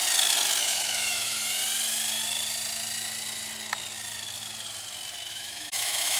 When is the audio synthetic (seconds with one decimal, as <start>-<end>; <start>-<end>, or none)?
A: 0.6-1.6; 5.3-6.2